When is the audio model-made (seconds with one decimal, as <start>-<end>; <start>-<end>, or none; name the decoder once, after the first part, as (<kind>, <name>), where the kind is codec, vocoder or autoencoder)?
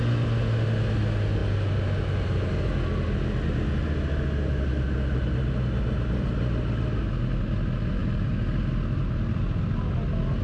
none